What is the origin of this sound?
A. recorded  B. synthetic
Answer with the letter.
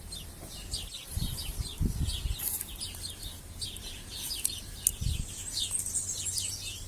A